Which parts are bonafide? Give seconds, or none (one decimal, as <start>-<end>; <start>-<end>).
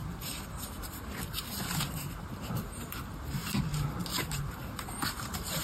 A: 0.0-3.3; 3.7-4.2